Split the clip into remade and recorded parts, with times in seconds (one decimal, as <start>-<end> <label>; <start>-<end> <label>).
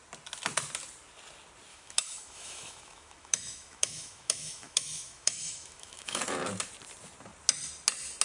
0.0-1.7 recorded; 1.7-6.2 remade; 6.2-8.2 recorded